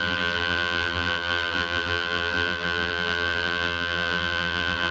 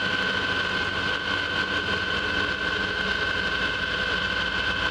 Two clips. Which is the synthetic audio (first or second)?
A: first